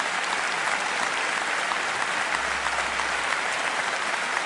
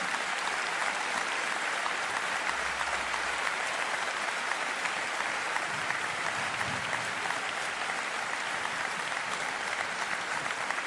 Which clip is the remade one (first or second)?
second